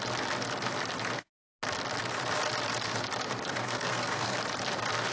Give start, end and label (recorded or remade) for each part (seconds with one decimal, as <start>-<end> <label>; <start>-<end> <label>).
0.0-3.6 recorded; 3.6-4.4 remade; 4.4-5.1 recorded